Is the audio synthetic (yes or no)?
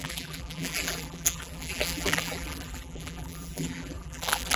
yes